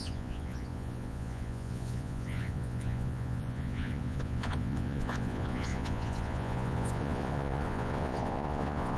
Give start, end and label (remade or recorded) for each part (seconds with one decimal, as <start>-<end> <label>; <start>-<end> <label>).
0.0-9.0 remade